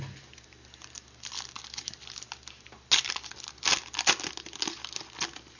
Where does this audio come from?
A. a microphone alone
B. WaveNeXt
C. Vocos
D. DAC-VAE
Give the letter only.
A